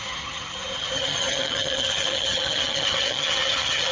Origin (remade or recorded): remade